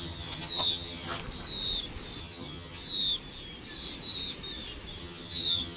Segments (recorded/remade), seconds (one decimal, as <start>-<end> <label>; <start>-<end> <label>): 0.0-1.2 remade; 1.2-2.2 recorded; 2.2-2.8 remade; 2.8-5.0 recorded; 5.0-5.8 remade